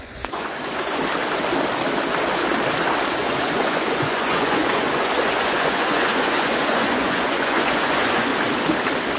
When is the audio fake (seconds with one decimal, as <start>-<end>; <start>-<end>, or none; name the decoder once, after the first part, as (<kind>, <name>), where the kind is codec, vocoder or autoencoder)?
0.0-1.0 (vocoder, Vocos); 3.1-8.3